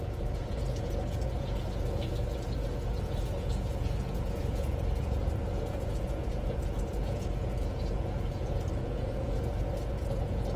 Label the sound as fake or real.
fake